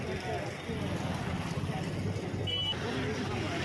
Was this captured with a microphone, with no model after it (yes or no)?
yes